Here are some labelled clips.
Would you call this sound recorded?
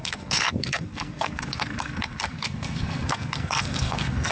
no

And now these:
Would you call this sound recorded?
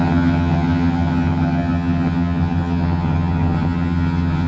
no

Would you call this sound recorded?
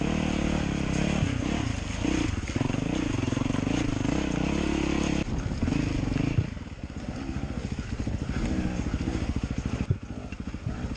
yes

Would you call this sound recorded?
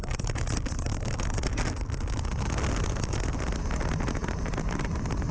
yes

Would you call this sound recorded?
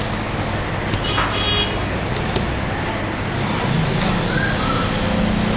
yes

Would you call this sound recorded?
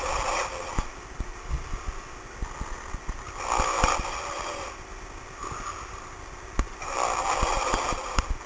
yes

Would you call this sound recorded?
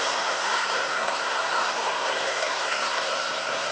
no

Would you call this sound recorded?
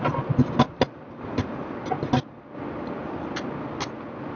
yes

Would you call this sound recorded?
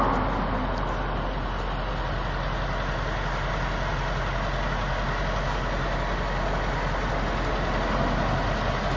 yes